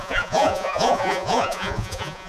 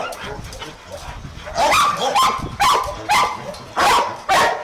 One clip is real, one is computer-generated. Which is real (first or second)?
second